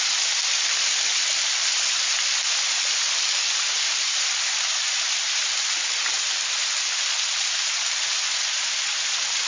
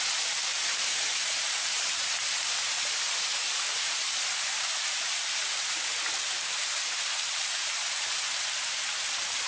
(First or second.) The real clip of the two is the first